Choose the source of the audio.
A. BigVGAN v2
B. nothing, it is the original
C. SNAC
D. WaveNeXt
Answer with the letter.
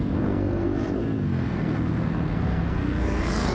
C